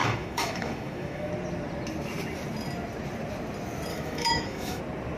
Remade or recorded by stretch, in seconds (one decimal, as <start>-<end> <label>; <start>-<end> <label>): 0.0-1.3 remade; 1.3-3.9 recorded; 3.9-4.8 remade; 4.8-5.2 recorded